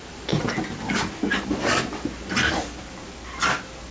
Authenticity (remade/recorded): recorded